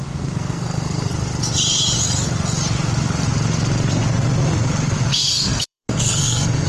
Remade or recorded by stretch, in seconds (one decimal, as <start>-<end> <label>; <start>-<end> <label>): 0.0-1.1 remade; 1.1-5.1 recorded; 5.1-6.7 remade